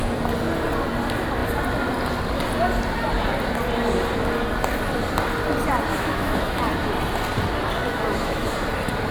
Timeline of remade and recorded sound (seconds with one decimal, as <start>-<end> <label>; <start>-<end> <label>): 0.0-5.9 recorded; 5.9-6.6 remade; 6.6-7.9 recorded; 7.9-8.5 remade; 8.5-9.1 recorded